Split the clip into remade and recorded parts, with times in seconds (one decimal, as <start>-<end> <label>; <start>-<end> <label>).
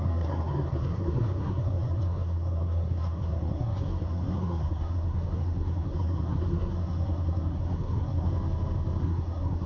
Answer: 0.0-8.3 remade; 8.3-9.0 recorded; 9.0-9.7 remade